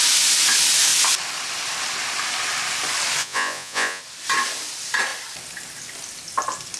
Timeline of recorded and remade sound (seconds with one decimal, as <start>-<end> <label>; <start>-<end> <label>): 0.0-3.2 recorded; 3.2-4.0 remade; 4.0-6.8 recorded